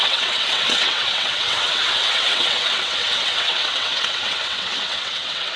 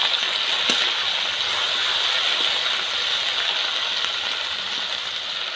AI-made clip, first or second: first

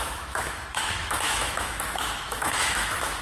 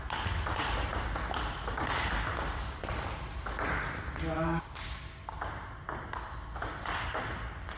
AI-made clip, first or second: first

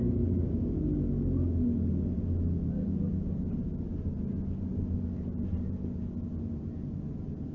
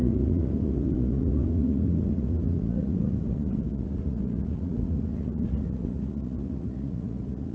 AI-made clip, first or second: second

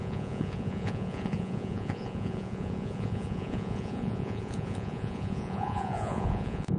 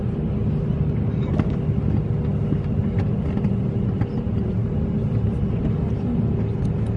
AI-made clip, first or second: first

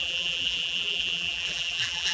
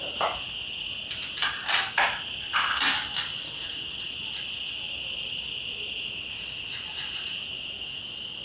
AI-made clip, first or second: first